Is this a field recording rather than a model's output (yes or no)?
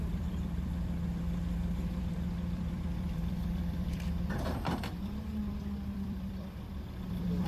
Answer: no